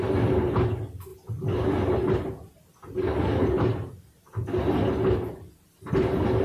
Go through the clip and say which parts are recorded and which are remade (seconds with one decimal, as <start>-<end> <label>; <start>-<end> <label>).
0.0-6.4 recorded